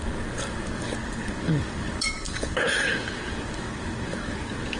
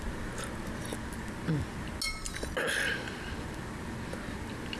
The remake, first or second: first